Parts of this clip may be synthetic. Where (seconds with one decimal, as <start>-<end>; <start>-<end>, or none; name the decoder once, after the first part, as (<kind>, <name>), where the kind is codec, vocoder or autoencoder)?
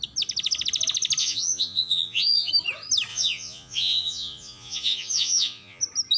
1.2-2.5 (vocoder, Vocos); 3.1-5.8